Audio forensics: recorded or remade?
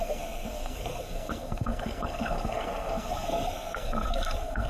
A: remade